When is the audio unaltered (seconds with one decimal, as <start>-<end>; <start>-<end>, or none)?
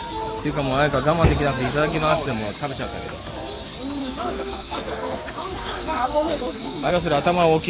0.0-4.0; 6.9-7.7